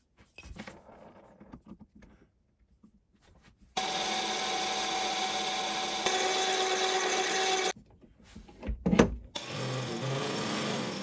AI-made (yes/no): no